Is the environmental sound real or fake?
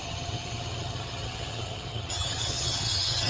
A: fake